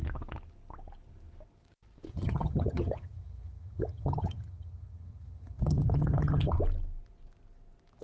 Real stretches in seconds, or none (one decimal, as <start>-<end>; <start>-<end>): 0.0-2.1; 6.5-8.0